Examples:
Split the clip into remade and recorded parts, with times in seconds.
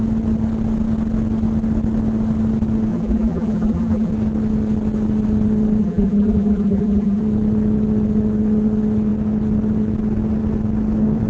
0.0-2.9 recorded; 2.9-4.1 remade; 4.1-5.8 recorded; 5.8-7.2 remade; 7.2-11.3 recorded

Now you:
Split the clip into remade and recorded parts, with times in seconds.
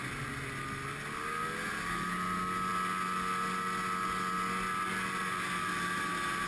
0.0-6.5 recorded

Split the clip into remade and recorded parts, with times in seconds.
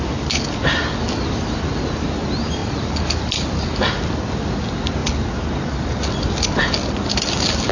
0.0-2.6 recorded; 2.6-3.9 remade; 3.9-7.7 recorded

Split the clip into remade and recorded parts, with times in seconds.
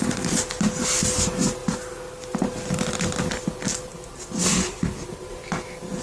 0.0-1.6 recorded; 1.6-3.3 remade; 3.3-3.9 recorded; 3.9-5.2 remade; 5.2-6.0 recorded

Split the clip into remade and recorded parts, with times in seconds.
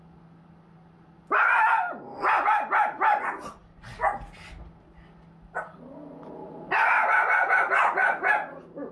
0.0-8.9 recorded